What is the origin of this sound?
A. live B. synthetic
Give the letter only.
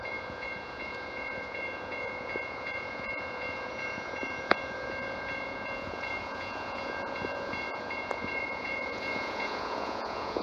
B